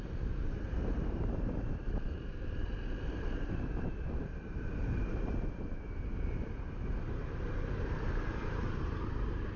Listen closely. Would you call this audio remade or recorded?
remade